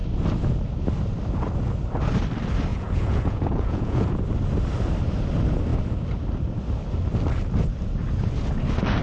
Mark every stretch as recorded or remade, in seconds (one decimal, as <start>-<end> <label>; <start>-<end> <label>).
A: 0.0-2.7 recorded; 2.7-4.2 remade; 4.2-9.0 recorded

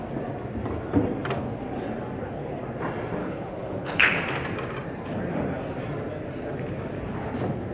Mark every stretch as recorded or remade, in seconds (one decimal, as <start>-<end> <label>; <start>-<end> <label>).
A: 0.0-3.2 recorded; 3.2-4.1 remade; 4.1-7.7 recorded

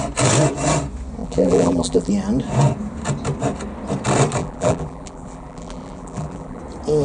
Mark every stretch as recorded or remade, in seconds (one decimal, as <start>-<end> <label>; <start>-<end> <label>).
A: 0.0-1.2 recorded; 1.2-2.1 remade; 2.1-4.4 recorded; 4.4-6.6 remade; 6.6-7.0 recorded

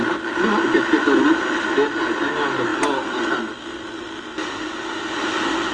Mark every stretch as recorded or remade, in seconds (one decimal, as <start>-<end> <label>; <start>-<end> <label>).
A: 0.0-5.7 recorded

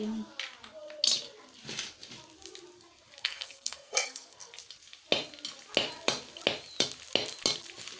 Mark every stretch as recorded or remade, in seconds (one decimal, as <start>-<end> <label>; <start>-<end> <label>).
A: 0.0-3.2 recorded; 3.2-4.5 remade; 4.5-8.0 recorded